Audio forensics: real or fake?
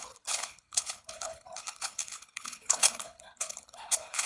fake